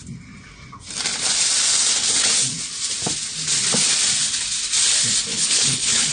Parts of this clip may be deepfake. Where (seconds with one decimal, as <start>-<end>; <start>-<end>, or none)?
5.3-6.1